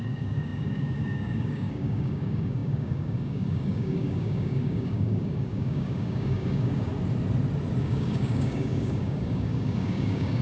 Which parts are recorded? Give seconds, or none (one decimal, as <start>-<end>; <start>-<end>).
6.9-7.8